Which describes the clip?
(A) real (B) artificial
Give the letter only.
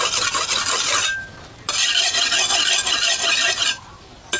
A